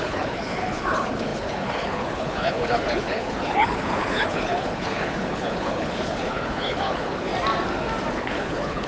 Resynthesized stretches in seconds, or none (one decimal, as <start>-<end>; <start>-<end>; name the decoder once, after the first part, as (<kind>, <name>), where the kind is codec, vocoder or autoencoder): 0.0-7.3 (codec, HILCodec); 8.1-8.9